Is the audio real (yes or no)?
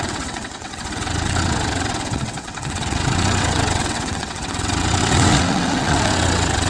no